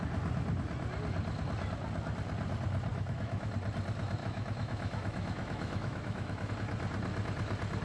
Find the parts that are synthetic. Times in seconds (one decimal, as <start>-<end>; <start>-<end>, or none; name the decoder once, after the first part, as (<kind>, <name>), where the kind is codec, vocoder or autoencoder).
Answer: 2.9-3.5 (autoencoder, DAC-VAE); 4.2-6.5